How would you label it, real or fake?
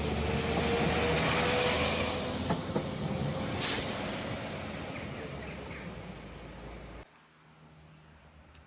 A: real